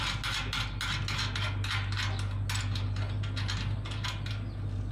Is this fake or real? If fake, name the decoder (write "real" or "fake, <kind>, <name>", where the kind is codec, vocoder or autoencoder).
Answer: real